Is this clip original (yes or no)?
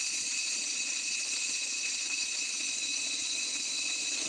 no